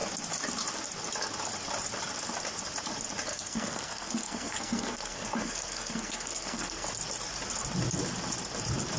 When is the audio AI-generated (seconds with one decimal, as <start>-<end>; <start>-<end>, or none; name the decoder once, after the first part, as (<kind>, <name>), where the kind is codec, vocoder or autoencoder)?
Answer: 3.3-6.9 (codec, SNAC)